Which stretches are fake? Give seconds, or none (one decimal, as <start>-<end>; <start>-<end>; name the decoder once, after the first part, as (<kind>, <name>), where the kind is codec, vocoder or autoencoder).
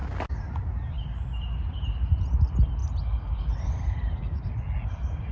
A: none